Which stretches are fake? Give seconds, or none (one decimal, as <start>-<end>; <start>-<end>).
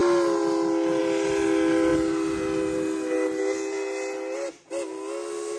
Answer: none